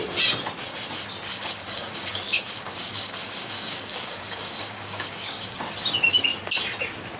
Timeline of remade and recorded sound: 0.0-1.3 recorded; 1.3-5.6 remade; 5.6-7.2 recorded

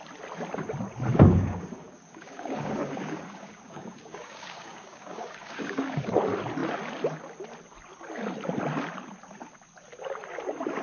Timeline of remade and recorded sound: 0.0-1.1 recorded; 1.1-6.1 remade; 6.1-10.8 recorded